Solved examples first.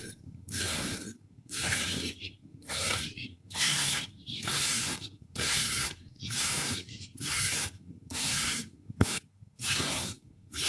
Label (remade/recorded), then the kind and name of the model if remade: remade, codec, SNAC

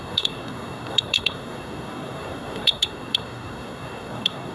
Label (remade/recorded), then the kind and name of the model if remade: remade, codec, SNAC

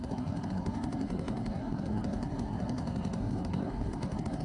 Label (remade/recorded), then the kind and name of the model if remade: remade, codec, SNAC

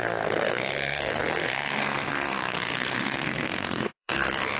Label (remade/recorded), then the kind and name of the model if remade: remade, codec, SNAC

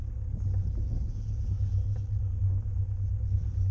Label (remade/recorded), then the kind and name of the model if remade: recorded